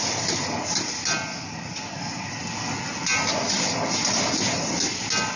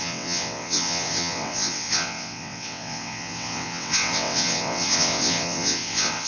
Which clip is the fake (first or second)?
second